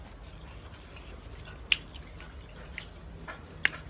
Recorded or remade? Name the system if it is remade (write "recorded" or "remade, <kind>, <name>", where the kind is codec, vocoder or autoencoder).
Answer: recorded